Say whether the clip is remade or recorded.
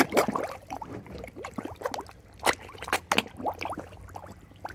recorded